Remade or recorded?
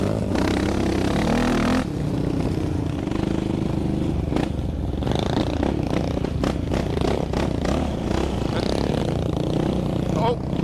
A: recorded